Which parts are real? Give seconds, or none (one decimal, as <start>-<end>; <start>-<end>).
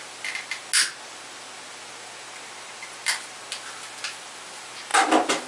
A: 0.0-5.5